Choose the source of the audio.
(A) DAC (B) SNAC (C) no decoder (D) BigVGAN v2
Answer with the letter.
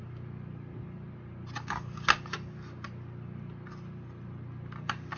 C